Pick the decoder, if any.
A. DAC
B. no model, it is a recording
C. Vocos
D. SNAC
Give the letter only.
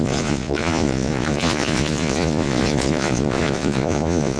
C